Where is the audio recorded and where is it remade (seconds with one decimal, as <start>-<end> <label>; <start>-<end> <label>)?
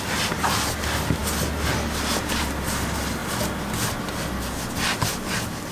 0.0-5.7 recorded